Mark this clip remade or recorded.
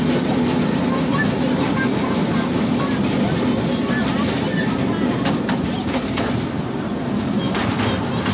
recorded